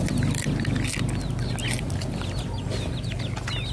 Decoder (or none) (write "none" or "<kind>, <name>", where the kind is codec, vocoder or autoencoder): none